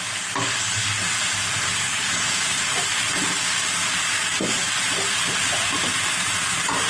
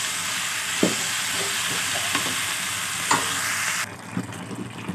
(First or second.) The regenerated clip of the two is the first